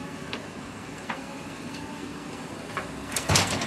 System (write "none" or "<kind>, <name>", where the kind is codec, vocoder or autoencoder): codec, SNAC